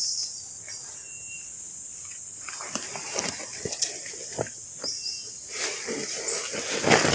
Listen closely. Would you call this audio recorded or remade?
recorded